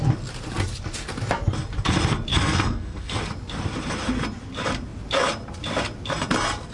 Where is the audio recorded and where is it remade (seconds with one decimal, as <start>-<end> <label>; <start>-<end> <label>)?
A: 0.0-2.3 recorded; 2.3-3.2 remade; 3.2-6.7 recorded

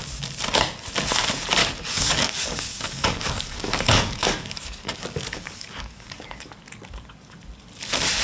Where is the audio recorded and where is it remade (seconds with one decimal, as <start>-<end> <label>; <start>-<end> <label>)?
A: 0.0-1.6 recorded; 1.6-6.5 remade; 6.5-8.2 recorded

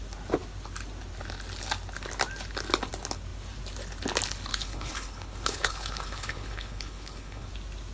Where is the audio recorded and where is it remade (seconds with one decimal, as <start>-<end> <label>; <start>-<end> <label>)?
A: 0.0-4.5 recorded; 4.5-7.5 remade; 7.5-7.9 recorded

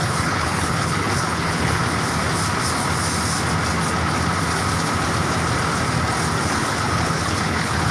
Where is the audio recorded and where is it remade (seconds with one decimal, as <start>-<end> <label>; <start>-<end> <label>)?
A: 0.0-1.8 remade; 1.8-6.4 recorded; 6.4-7.9 remade